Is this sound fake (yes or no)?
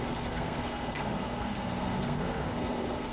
yes